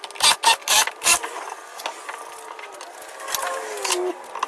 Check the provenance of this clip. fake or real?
real